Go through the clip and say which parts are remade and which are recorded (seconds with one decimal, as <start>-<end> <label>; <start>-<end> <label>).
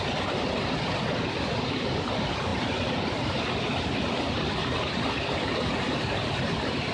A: 0.0-6.9 recorded